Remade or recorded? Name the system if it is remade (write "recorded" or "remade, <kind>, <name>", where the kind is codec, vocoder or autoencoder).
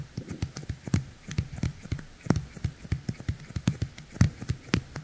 recorded